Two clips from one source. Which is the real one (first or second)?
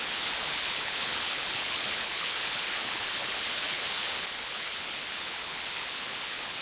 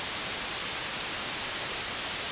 second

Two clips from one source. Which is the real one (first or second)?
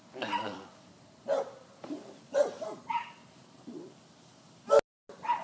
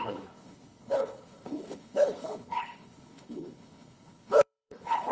first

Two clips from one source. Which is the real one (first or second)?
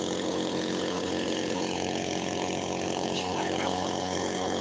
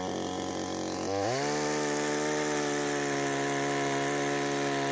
second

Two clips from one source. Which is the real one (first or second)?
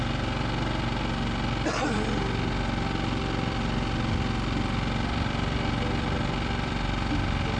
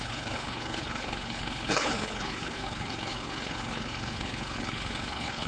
first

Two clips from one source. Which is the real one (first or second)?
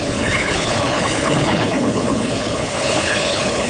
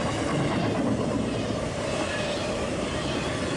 second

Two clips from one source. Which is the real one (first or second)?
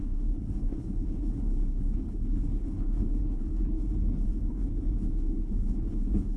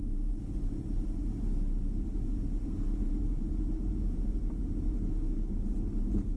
second